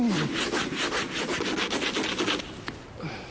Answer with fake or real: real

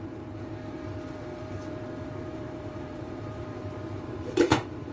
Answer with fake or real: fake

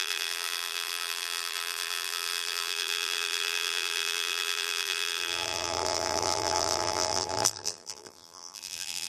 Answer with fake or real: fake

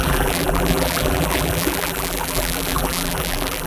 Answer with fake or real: fake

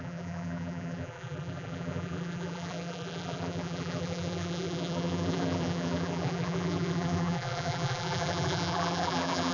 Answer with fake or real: fake